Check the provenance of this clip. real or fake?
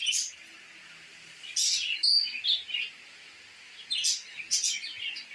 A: real